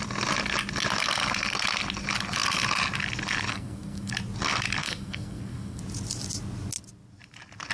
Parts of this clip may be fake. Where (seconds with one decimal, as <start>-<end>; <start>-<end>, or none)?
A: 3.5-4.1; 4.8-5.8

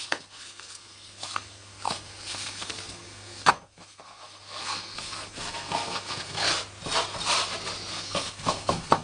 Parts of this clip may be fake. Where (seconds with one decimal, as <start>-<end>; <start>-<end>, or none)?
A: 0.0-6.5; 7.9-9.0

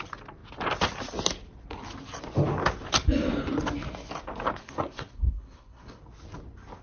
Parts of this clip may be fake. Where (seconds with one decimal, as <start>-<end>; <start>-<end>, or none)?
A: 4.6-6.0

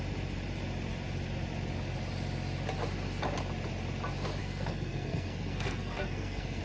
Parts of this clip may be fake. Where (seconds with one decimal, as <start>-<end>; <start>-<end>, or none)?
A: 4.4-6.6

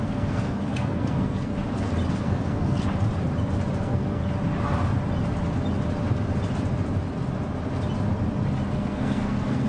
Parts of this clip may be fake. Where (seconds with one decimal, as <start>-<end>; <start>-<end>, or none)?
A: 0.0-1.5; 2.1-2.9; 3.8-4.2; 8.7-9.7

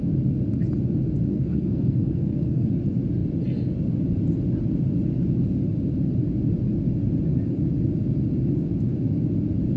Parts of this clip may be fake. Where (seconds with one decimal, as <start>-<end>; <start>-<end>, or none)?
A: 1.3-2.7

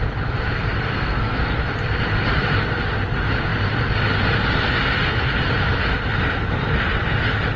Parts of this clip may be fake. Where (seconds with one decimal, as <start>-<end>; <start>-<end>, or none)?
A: 0.9-1.4

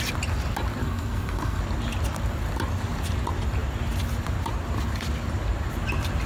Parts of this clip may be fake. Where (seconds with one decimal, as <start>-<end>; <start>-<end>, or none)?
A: 0.8-1.6